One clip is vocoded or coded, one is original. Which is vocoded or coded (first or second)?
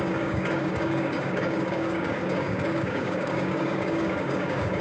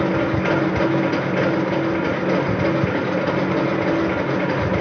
first